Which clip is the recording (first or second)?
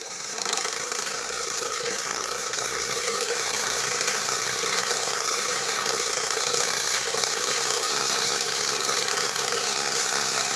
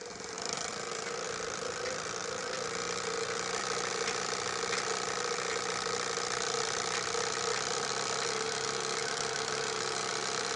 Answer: second